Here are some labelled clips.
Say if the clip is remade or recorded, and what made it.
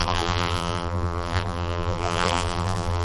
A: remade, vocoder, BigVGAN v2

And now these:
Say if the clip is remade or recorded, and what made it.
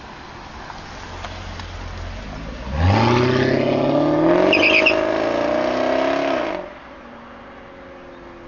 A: recorded